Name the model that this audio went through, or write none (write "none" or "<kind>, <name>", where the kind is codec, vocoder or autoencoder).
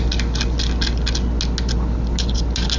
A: none